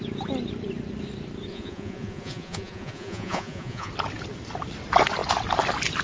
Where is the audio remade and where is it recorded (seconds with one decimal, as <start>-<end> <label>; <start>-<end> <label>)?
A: 0.0-1.5 recorded; 1.5-3.9 remade; 3.9-6.0 recorded